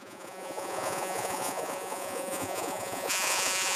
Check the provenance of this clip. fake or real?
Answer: fake